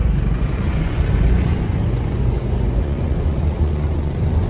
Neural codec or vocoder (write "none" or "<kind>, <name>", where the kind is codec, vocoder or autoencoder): vocoder, Vocos